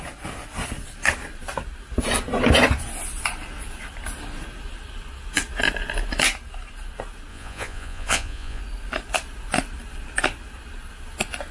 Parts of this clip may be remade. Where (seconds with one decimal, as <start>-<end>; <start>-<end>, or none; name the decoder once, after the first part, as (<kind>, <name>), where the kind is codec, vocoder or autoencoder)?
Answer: 7.3-8.6 (vocoder, Vocos)